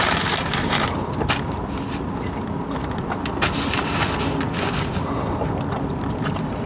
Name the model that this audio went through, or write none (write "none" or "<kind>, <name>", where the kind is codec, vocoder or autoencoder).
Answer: none